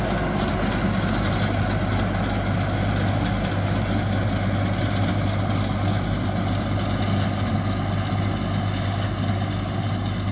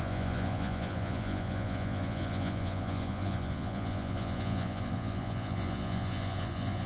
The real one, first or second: first